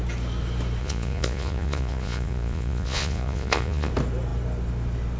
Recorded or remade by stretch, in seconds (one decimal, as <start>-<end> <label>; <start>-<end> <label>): 0.0-0.8 recorded; 0.8-3.9 remade; 3.9-5.2 recorded